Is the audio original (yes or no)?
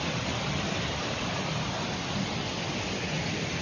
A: yes